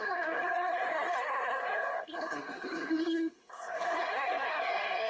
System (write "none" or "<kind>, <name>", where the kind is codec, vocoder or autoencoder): codec, SNAC